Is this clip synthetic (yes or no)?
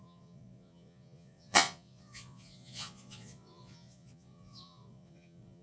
yes